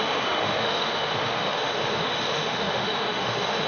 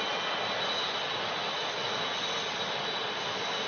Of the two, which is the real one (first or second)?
second